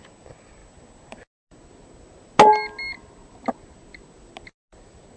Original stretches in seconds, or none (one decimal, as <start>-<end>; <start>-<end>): 0.0-5.2